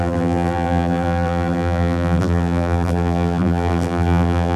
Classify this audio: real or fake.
fake